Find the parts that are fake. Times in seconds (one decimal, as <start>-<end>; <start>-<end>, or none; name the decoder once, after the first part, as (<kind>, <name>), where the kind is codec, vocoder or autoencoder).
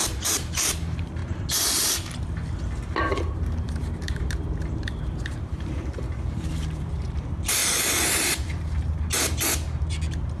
0.0-1.2 (vocoder, BigVGAN v2); 3.3-7.6